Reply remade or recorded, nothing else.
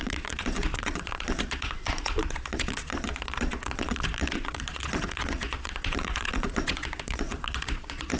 remade